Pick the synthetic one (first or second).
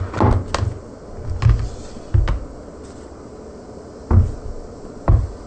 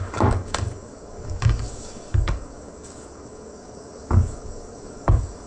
second